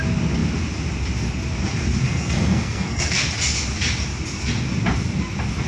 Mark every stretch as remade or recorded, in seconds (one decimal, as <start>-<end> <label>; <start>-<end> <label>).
0.0-2.0 recorded; 2.0-3.2 remade; 3.2-5.7 recorded